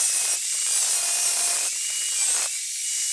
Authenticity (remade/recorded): recorded